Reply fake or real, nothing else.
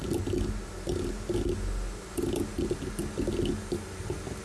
real